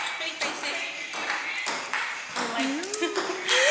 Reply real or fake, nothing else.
real